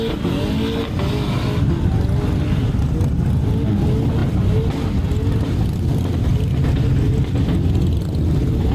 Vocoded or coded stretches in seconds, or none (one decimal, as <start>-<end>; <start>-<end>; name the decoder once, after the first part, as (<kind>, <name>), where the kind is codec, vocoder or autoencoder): none